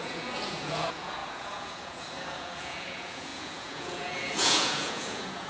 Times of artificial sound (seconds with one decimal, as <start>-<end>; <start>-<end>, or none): 0.0-5.5